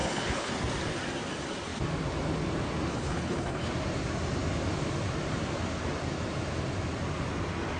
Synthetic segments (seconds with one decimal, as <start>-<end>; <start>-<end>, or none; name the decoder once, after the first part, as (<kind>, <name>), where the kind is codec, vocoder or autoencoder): 0.0-0.5 (codec, HILCodec); 2.9-3.7